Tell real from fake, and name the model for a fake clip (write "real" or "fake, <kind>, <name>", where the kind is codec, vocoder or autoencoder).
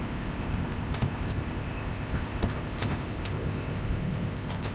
fake, codec, ZipCodec